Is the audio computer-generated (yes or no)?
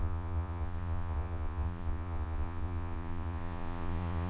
yes